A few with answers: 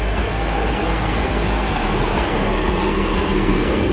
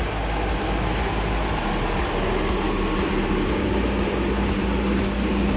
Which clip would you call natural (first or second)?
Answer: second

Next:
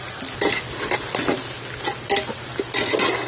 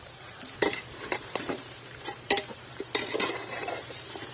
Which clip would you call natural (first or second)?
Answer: first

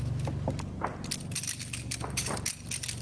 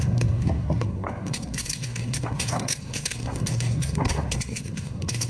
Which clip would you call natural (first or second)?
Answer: first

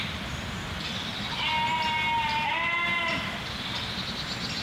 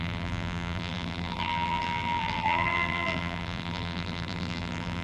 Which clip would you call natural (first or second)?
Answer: first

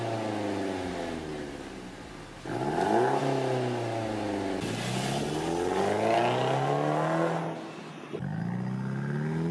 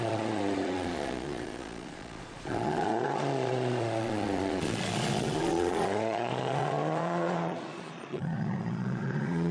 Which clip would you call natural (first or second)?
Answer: first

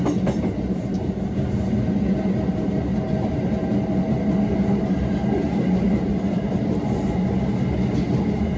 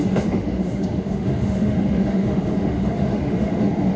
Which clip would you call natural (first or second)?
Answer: first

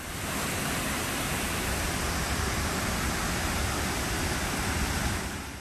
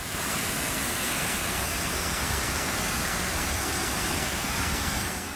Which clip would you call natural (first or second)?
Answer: first